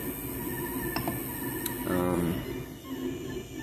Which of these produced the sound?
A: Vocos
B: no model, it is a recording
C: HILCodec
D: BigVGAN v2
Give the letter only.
B